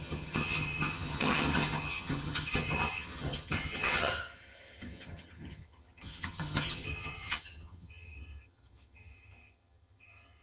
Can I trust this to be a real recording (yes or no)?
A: no